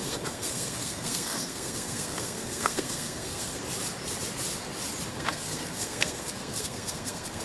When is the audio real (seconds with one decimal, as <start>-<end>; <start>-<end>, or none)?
3.6-5.1